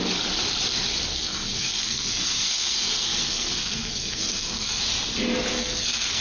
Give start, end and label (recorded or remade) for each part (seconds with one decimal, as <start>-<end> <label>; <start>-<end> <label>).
0.0-1.1 recorded; 1.1-4.8 remade; 4.8-5.5 recorded; 5.5-6.2 remade